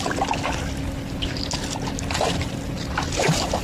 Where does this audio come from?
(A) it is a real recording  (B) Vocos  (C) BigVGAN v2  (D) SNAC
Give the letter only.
A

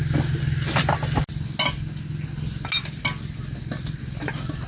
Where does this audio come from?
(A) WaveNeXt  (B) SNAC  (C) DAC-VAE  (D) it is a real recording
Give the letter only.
D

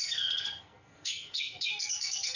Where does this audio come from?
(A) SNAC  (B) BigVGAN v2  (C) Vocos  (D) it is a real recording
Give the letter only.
A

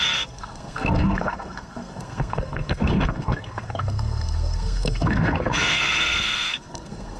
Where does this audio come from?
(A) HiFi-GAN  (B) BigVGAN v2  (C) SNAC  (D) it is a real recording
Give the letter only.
C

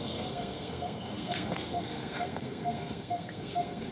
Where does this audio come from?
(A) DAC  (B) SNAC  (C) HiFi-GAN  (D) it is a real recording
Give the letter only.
B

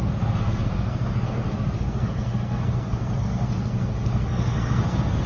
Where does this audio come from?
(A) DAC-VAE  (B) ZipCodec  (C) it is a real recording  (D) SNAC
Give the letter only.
D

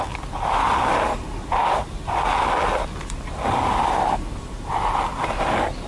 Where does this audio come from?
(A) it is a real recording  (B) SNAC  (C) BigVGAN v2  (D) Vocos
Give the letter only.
A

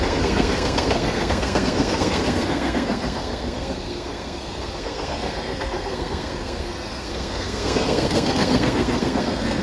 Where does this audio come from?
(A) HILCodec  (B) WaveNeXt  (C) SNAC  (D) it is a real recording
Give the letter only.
C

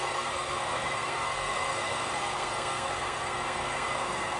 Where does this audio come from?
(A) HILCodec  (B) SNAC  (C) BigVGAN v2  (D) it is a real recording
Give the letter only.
B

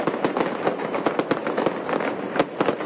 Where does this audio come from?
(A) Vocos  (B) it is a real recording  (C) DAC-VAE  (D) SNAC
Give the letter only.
B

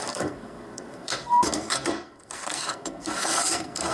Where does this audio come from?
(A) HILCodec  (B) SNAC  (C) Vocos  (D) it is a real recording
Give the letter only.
B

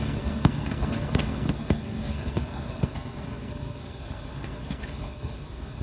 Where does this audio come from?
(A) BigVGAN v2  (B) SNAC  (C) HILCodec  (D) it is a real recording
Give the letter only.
B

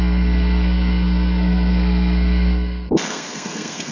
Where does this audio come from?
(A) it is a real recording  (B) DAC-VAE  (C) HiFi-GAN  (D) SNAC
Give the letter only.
D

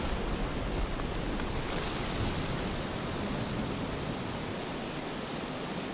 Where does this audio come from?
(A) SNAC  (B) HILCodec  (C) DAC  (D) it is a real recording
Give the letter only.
D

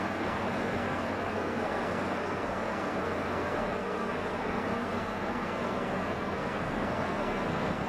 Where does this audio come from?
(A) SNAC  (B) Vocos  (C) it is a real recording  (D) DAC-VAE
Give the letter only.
A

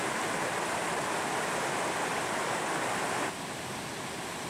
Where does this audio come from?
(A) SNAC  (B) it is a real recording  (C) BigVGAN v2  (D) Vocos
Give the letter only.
B